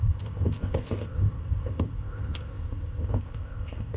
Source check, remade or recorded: remade